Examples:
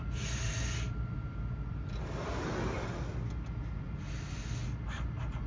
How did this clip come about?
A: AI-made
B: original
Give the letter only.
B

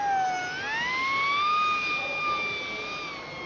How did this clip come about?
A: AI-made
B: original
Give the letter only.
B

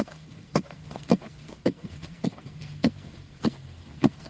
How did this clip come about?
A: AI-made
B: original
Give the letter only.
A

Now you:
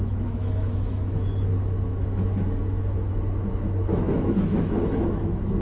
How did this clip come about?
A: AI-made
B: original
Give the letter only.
A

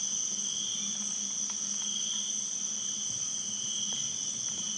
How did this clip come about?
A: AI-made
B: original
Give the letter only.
B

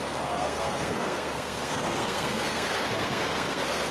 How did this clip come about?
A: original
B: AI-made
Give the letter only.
B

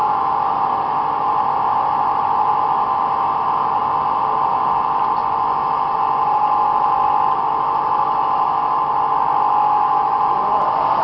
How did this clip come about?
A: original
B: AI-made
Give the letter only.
A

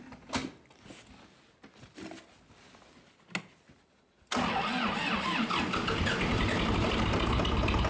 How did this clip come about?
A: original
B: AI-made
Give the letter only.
A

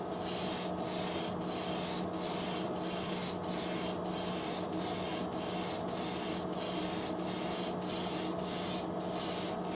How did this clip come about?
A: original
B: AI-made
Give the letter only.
A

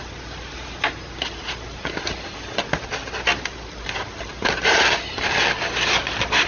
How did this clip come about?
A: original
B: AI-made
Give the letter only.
A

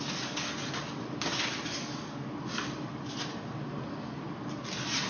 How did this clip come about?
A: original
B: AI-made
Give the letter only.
A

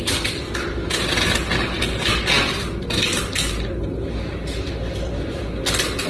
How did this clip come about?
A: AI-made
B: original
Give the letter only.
B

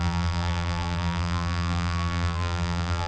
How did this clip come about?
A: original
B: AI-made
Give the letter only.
B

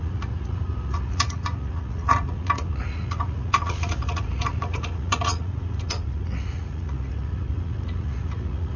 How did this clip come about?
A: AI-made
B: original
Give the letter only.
A